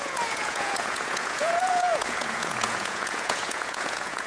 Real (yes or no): no